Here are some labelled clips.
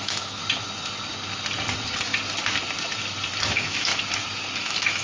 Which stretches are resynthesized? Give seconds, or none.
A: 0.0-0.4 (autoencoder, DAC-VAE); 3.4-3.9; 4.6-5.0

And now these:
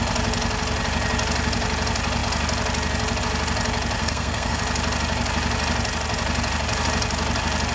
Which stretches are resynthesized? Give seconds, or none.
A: 4.0-4.6 (codec, SNAC)

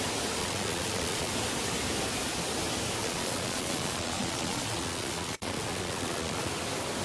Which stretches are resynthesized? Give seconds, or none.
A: 0.4-1.3 (vocoder, Vocos); 3.0-6.5